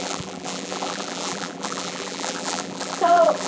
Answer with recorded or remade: remade